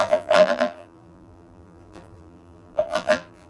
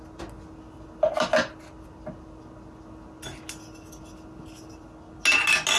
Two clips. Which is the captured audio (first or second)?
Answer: second